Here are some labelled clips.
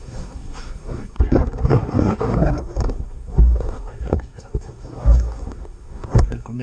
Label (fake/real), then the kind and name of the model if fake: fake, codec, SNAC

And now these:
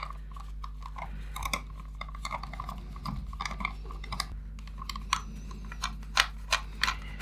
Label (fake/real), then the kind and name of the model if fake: real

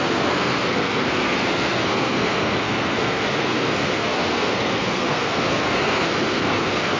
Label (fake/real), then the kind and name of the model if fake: fake, codec, SNAC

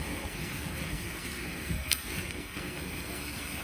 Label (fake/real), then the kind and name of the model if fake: fake, codec, SNAC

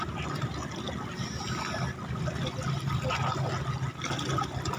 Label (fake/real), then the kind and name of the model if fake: real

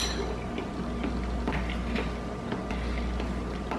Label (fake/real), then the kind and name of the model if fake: real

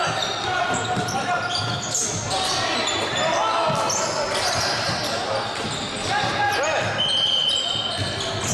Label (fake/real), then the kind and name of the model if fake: real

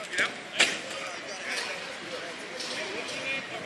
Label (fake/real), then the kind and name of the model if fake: real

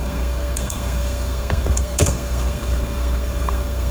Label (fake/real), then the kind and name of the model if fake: fake, codec, SNAC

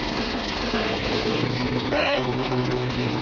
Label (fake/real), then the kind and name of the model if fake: fake, codec, SNAC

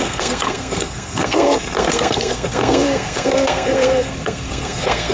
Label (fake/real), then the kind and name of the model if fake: fake, codec, SNAC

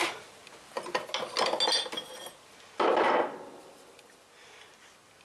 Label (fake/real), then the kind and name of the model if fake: real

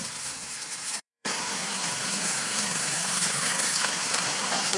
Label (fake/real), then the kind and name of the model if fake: fake, codec, SNAC